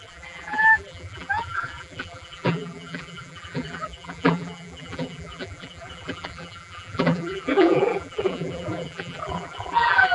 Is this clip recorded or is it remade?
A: remade